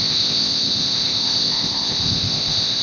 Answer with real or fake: fake